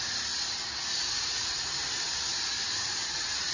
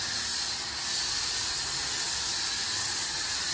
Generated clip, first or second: first